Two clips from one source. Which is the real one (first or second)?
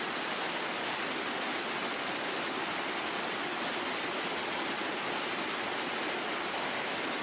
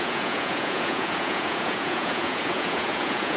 first